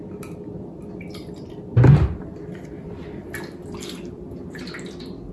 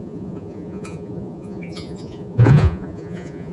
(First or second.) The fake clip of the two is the second